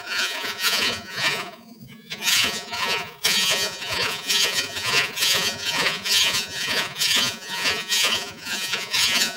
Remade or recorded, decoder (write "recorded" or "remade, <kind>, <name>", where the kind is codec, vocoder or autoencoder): remade, vocoder, Vocos